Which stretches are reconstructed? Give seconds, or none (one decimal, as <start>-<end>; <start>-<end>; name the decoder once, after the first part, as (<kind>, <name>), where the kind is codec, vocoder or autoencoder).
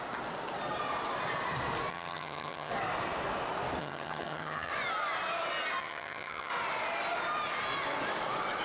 1.9-2.7 (vocoder, HiFi-GAN); 3.8-4.7; 5.8-6.5